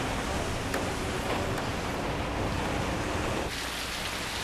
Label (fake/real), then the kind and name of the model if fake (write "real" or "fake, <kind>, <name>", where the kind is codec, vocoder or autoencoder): real